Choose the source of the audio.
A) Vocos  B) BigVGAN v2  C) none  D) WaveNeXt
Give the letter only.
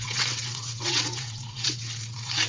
D